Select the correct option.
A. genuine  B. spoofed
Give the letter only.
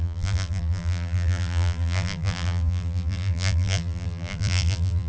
B